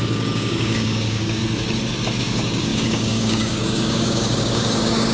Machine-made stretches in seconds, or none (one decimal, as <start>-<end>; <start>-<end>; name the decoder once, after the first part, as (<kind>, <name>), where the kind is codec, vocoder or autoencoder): 0.0-1.4 (codec, DAC); 2.2-5.1